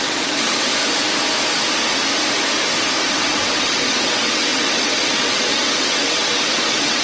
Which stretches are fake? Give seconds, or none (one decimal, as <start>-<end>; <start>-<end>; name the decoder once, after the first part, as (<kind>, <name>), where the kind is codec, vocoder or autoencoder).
0.0-0.7 (vocoder, WaveNeXt); 3.1-7.0

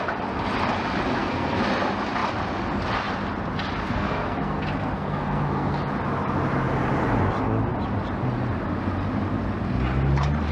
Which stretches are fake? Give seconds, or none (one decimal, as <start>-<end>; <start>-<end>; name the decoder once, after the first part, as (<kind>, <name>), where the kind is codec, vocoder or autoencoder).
1.1-1.6 (codec, SNAC); 3.8-5.8

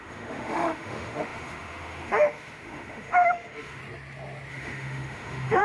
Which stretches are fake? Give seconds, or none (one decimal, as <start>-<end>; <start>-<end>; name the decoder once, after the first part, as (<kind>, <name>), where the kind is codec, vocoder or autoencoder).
0.0-3.8 (autoencoder, DAC-VAE); 4.5-5.6

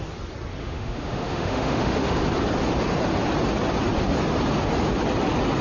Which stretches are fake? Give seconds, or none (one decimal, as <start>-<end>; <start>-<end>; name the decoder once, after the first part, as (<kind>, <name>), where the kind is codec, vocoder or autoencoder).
0.6-2.1 (autoencoder, DAC-VAE)

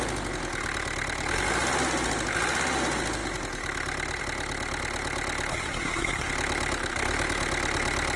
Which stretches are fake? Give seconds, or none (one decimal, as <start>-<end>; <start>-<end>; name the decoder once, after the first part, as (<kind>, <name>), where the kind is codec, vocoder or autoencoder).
5.5-6.3 (codec, SNAC)

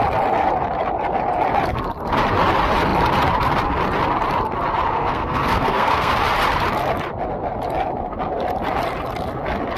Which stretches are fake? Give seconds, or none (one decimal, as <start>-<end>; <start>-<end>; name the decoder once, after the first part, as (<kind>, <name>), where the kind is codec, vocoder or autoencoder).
4.9-6.1 (codec, SNAC)